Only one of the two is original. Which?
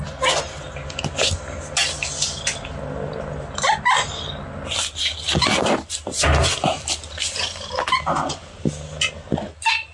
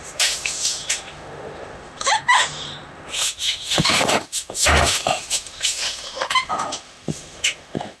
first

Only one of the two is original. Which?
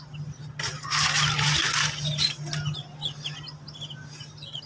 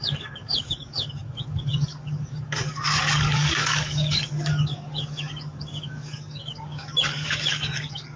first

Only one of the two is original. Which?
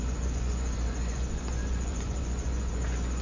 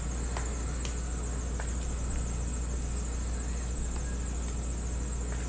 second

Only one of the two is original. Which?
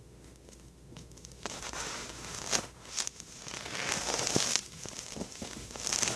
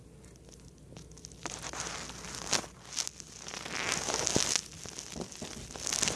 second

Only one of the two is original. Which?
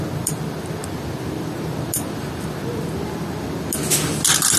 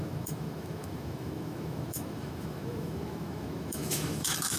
first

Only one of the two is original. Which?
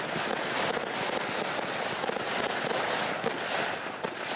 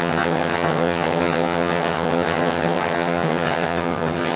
first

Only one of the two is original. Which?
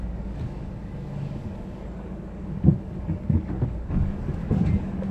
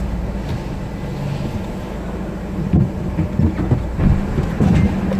second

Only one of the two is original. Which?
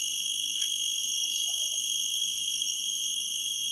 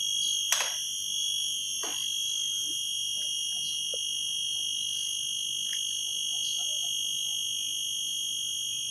second